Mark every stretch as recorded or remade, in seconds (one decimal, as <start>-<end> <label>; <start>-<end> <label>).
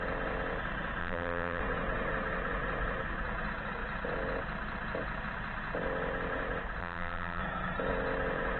0.0-1.0 recorded; 1.0-1.6 remade; 1.6-6.8 recorded; 6.8-7.4 remade; 7.4-8.6 recorded